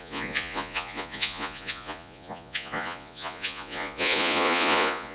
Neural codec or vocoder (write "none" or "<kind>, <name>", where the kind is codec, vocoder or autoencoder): vocoder, Vocos